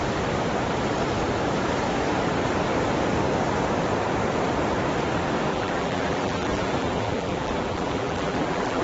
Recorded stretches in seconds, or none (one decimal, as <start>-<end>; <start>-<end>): 0.0-5.5